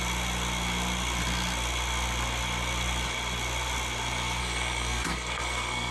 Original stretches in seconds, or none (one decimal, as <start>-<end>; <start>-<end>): 0.0-4.4